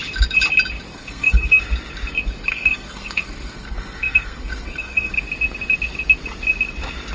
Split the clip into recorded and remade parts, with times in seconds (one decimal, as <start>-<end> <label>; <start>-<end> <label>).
0.0-0.9 recorded; 0.9-1.6 remade; 1.6-2.5 recorded; 2.5-5.1 remade; 5.1-7.1 recorded